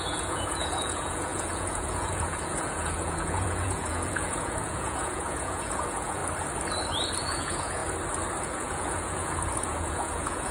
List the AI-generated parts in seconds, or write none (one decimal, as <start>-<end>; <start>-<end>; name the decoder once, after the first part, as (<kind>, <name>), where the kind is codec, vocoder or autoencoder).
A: 0.0-6.2 (vocoder, Vocos); 7.2-7.8; 8.4-10.5